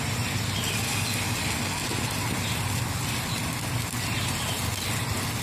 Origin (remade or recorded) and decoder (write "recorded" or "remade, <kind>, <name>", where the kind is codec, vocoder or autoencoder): recorded